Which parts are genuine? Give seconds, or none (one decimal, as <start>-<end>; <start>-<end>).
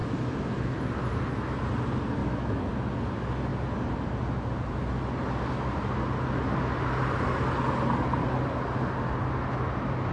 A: 0.8-2.2; 2.7-10.1